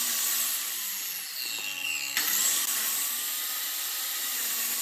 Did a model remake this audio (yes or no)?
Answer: no